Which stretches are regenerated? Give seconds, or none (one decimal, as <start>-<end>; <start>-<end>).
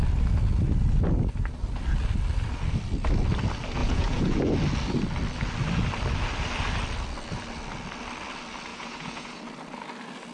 3.8-4.4; 8.7-9.4